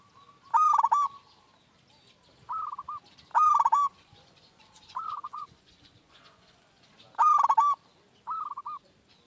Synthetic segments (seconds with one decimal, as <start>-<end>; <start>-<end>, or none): 3.9-6.9